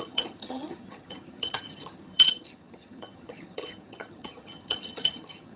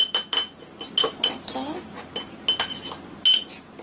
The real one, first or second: second